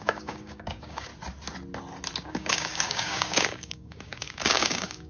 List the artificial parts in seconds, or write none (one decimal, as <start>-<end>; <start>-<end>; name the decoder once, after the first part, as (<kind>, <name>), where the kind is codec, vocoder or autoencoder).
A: 0.0-1.1 (codec, DAC); 2.2-5.1